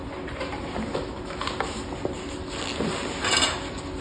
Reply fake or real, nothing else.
real